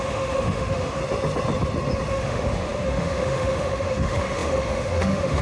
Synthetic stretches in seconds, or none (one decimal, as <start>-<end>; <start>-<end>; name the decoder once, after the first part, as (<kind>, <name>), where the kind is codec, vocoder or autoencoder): 0.0-1.0 (autoencoder, DAC-VAE); 2.1-5.4